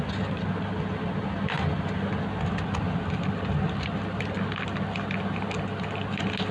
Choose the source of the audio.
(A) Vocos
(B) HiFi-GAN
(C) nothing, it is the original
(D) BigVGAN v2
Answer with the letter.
C